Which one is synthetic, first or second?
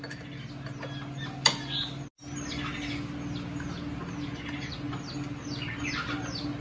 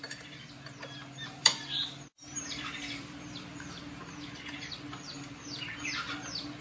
second